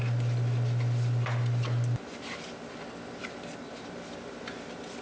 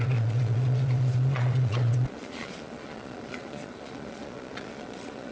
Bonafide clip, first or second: first